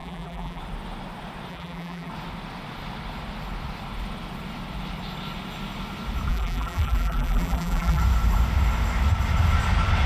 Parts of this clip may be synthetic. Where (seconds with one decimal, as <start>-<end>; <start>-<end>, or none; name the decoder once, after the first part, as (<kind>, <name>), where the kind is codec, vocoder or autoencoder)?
0.0-0.6 (vocoder, BigVGAN v2); 1.5-2.1; 6.3-8.0